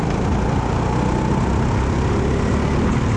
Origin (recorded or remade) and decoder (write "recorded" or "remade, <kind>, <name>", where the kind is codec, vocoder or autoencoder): recorded